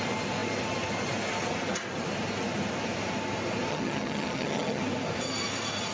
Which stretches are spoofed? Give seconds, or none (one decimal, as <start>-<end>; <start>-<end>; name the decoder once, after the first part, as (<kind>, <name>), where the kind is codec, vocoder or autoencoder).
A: 3.7-4.8 (vocoder, HiFi-GAN)